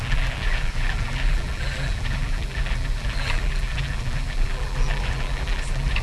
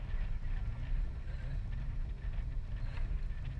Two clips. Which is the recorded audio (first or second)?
second